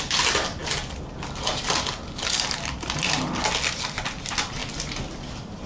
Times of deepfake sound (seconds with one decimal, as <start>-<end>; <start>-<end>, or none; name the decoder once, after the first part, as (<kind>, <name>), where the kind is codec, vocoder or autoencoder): none